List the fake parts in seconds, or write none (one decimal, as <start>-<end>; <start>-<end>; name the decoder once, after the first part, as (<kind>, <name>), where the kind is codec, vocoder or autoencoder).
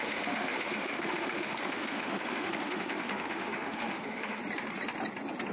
0.0-4.4 (autoencoder, DAC-VAE)